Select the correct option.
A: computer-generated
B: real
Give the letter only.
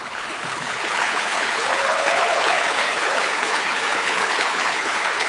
A